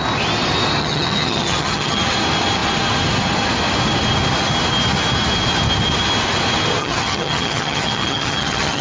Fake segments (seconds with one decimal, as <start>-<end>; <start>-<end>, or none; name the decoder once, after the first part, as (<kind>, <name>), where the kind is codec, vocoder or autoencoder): 0.8-2.0 (vocoder, HiFi-GAN); 6.8-8.8